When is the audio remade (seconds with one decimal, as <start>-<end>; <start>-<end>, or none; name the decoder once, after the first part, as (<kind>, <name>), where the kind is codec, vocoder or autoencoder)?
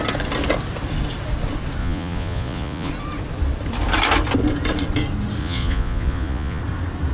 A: 1.8-2.9 (vocoder, Vocos); 5.4-6.6